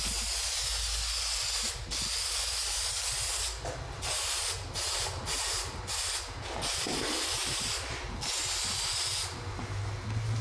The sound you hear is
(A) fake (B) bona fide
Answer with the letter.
B